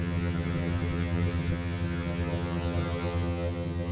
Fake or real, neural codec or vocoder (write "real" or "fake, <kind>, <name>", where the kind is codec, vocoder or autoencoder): fake, vocoder, HiFi-GAN